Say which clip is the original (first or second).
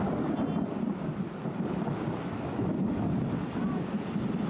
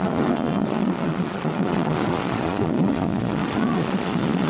first